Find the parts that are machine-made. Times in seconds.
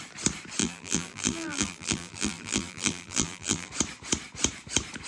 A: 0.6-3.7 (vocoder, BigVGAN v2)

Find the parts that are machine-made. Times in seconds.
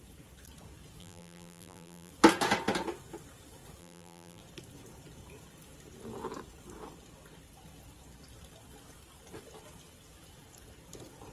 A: 1.0-2.1 (vocoder, BigVGAN v2); 3.8-4.4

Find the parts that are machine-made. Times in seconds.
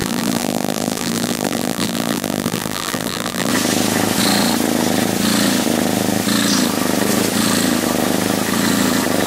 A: 0.0-3.5 (vocoder, BigVGAN v2)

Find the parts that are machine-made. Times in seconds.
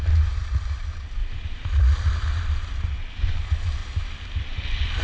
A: 1.2-1.8 (vocoder, BigVGAN v2); 3.8-4.4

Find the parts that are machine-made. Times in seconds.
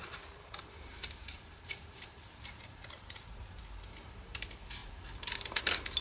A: 0.0-3.6 (vocoder, BigVGAN v2); 4.8-5.6